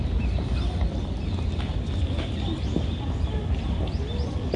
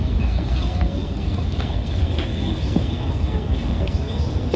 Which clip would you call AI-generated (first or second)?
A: second